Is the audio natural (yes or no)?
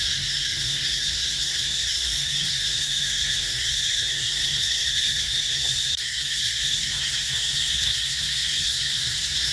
no